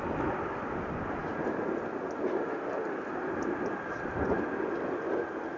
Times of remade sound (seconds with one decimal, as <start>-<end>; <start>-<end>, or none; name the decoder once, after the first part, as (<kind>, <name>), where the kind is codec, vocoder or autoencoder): none